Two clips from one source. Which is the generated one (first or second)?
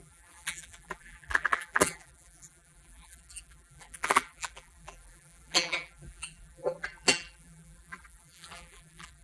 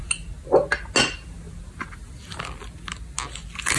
first